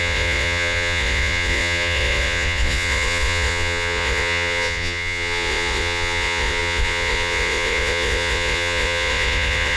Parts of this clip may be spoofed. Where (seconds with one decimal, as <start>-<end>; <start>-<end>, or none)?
0.0-9.8